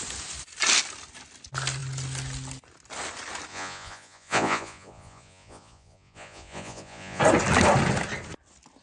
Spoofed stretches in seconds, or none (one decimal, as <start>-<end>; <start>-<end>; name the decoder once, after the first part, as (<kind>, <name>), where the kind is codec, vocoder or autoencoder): 3.5-7.2 (vocoder, Vocos)